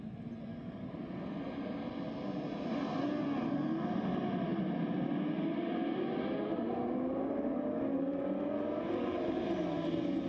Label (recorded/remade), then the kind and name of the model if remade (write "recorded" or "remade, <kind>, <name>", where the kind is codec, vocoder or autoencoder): recorded